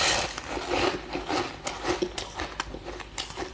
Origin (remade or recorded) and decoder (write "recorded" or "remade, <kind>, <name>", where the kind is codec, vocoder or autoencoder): recorded